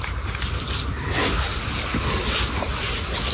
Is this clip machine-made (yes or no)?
no